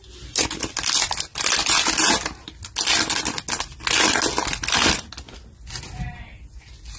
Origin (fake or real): real